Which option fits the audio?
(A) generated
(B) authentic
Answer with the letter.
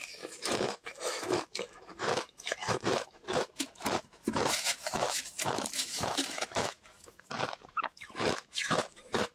A